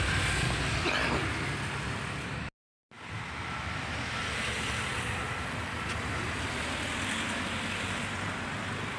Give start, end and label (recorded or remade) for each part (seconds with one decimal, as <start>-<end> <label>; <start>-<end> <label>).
0.0-9.0 recorded